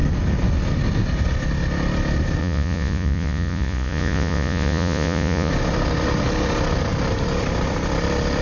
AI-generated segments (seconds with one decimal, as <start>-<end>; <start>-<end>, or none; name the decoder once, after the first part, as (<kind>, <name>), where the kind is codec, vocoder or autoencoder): 2.4-5.5 (vocoder, Vocos)